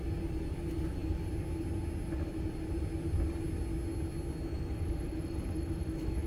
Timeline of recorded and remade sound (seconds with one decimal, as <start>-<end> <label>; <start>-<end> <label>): 0.0-4.5 recorded; 4.5-6.3 remade